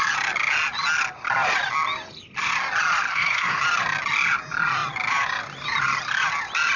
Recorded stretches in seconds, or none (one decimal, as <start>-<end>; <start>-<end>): 0.0-3.1; 3.6-6.8